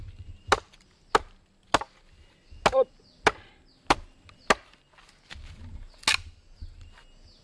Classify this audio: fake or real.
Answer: real